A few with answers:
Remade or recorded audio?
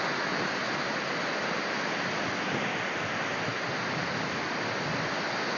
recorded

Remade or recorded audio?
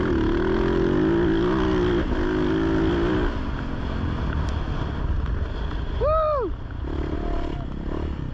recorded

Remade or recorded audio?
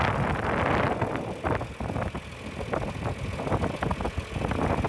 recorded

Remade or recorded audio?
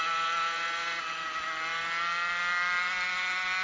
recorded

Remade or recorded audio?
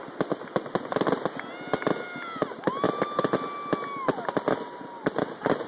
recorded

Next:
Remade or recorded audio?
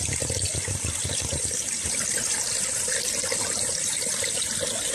recorded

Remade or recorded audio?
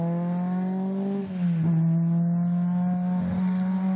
recorded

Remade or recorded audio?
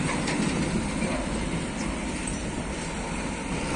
recorded